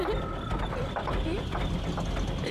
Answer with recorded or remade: recorded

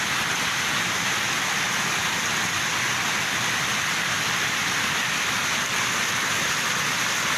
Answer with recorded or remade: recorded